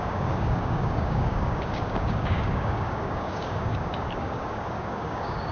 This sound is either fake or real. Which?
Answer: fake